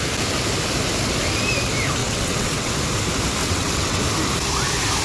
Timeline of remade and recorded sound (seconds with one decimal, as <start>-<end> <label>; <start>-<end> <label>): 0.0-2.0 recorded; 2.0-2.7 remade; 2.7-3.4 recorded; 3.4-4.0 remade; 4.0-5.0 recorded